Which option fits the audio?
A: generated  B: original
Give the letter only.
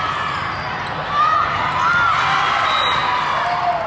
B